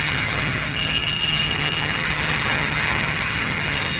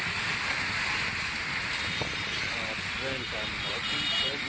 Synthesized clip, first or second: first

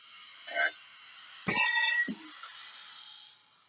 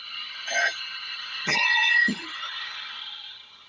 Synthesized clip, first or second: second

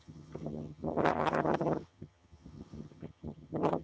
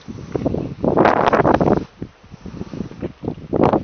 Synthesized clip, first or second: first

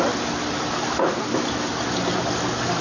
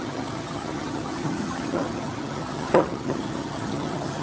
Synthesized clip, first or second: second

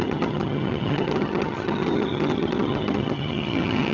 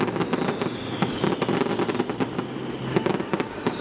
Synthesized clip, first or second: first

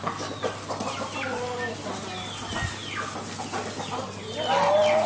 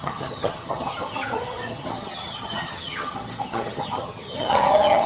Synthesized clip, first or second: second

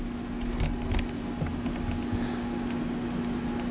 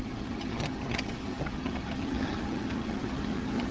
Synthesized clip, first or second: second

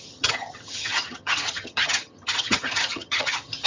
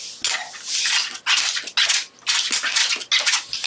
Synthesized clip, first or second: first